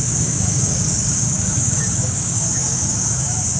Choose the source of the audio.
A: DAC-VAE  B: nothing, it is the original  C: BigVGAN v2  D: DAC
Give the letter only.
D